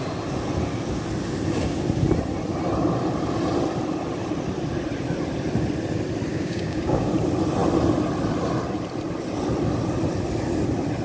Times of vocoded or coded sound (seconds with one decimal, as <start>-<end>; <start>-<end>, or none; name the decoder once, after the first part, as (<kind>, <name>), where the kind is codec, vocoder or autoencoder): 6.3-7.1 (codec, DAC)